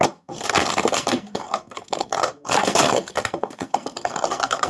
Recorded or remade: remade